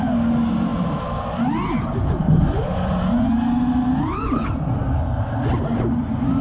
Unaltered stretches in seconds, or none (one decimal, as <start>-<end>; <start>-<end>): 0.0-0.7; 1.2-6.4